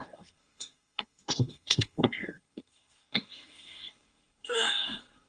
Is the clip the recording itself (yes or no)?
no